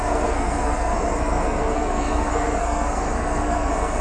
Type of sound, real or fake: fake